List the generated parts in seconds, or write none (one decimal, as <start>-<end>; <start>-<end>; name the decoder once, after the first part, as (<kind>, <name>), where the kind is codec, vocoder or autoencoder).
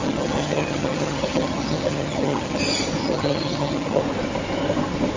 0.0-2.6 (vocoder, HiFi-GAN); 3.0-4.0